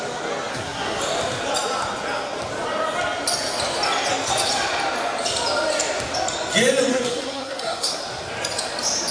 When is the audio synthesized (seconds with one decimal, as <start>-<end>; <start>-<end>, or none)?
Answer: 0.5-1.0; 6.9-8.0